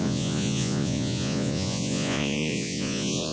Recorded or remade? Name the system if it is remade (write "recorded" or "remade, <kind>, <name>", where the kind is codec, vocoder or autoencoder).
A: remade, vocoder, Vocos